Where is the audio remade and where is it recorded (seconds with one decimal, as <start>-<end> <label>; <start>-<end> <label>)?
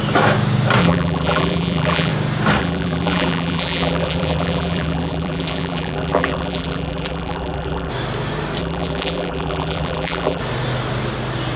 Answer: 0.0-0.8 recorded; 0.8-2.1 remade; 2.1-2.6 recorded; 2.6-7.9 remade; 7.9-8.6 recorded; 8.6-10.4 remade; 10.4-11.6 recorded